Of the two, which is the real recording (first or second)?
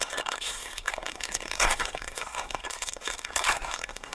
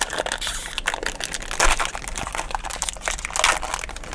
second